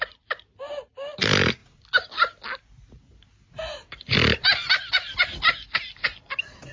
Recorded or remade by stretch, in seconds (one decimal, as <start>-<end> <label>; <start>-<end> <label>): 0.0-6.7 recorded